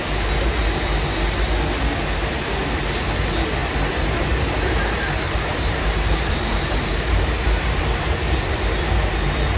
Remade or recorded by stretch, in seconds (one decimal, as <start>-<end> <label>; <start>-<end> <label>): 0.0-3.6 recorded; 3.6-8.8 remade; 8.8-9.6 recorded